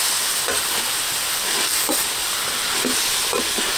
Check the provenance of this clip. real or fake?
real